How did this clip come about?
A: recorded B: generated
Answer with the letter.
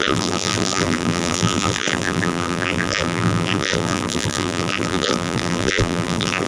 B